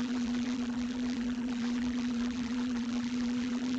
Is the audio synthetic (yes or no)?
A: yes